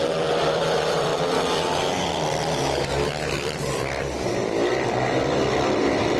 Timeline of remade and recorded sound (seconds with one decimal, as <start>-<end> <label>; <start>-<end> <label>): 0.0-1.1 remade; 1.1-2.0 recorded; 2.0-6.2 remade